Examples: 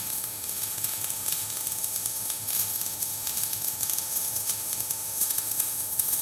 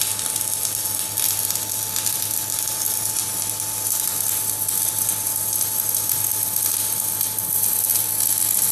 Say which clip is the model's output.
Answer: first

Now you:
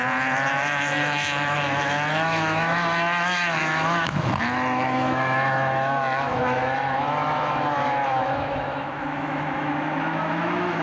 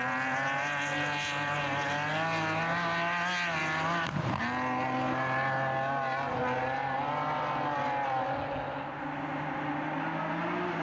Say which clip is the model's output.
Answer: first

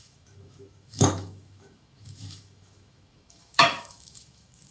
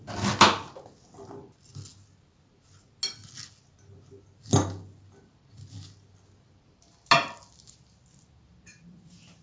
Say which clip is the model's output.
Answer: first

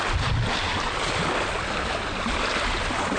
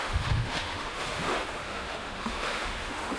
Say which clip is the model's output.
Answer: second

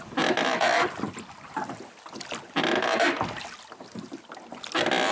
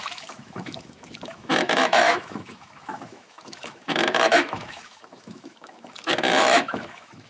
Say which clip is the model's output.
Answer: second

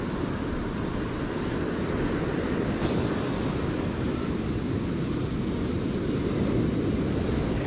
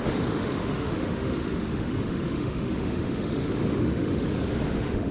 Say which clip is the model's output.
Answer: second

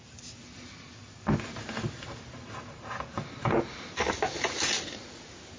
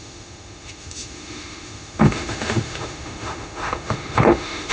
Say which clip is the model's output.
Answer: second